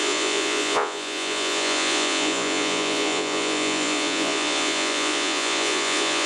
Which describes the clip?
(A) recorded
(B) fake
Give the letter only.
B